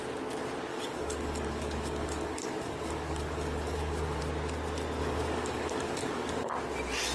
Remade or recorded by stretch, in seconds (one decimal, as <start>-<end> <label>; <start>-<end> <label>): 0.0-0.7 recorded; 0.7-4.2 remade; 4.2-5.0 recorded; 5.0-6.5 remade; 6.5-7.1 recorded